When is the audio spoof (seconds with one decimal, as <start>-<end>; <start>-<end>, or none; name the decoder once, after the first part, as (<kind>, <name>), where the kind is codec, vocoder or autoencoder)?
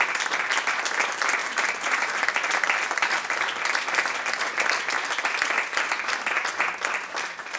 1.4-3.3 (vocoder, BigVGAN v2)